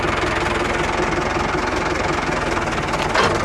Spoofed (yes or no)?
no